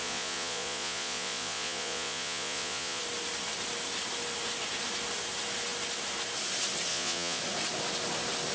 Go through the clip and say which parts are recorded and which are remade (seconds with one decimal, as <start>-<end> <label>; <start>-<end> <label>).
0.0-3.0 remade; 3.0-6.9 recorded; 6.9-7.4 remade; 7.4-8.5 recorded